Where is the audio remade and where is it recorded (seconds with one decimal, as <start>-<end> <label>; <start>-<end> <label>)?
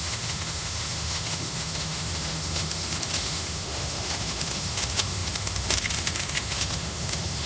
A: 0.0-7.5 remade